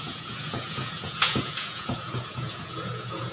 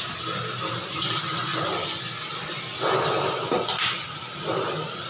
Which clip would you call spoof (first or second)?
first